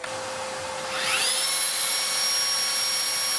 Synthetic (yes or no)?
no